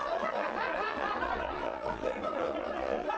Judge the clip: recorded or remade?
remade